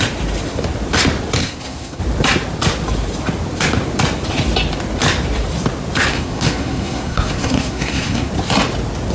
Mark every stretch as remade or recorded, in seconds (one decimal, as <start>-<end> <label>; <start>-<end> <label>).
0.0-1.4 recorded; 1.4-2.0 remade; 2.0-6.1 recorded; 6.1-8.3 remade; 8.3-9.1 recorded